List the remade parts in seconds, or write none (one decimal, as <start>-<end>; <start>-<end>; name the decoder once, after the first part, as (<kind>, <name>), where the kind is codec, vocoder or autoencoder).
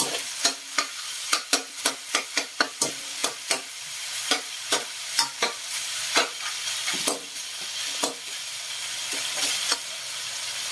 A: 3.2-6.1 (vocoder, BigVGAN v2)